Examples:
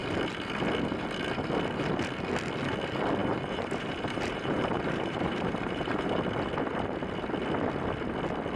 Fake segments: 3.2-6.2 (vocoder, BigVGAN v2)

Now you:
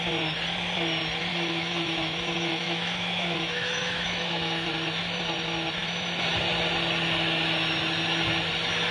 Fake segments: 1.3-4.7 (autoencoder, DAC-VAE)

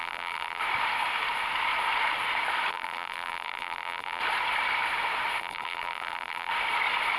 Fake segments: 0.0-0.6 (vocoder, BigVGAN v2); 2.7-4.2; 5.4-6.5